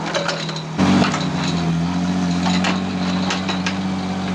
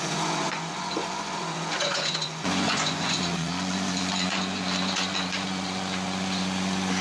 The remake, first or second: second